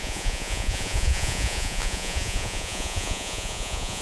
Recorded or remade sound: remade